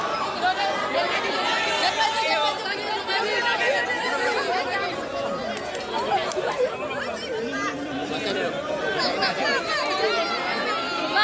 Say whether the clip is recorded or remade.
recorded